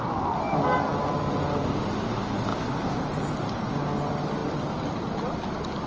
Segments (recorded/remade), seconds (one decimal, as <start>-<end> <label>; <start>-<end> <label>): 0.0-5.9 recorded